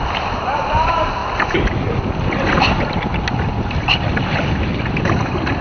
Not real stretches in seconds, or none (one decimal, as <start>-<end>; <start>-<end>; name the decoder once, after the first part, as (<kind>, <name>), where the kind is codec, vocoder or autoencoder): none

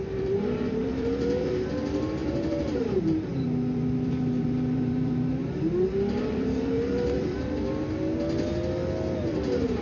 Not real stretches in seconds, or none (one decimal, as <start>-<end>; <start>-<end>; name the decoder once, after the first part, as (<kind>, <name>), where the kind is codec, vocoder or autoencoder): 0.0-5.4 (vocoder, BigVGAN v2); 6.2-7.6; 9.3-9.8

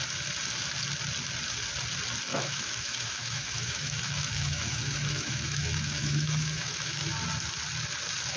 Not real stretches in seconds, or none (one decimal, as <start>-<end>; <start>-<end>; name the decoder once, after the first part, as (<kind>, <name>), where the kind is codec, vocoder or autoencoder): 2.3-7.1 (autoencoder, DAC-VAE)

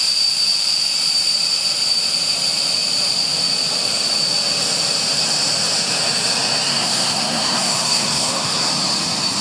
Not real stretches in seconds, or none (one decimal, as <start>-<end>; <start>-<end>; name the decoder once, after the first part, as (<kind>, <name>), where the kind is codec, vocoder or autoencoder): 6.7-8.7 (codec, SNAC)

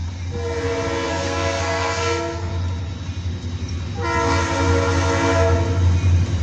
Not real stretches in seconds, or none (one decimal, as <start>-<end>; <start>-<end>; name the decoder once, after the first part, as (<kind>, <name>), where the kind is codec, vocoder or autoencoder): 1.1-2.5 (codec, SNAC)

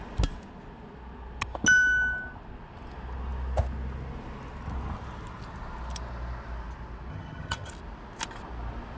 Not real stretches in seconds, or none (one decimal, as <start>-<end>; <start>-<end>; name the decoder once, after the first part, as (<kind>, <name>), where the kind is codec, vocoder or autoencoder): 7.1-7.7 (vocoder, HiFi-GAN)